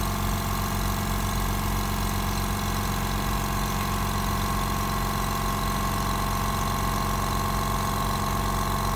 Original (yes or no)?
yes